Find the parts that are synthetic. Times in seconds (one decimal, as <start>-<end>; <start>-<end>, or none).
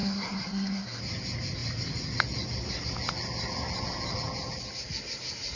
0.0-1.0